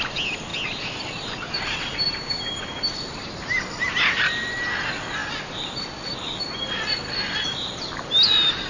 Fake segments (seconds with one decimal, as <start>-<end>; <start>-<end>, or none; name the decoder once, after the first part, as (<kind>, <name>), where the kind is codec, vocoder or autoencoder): none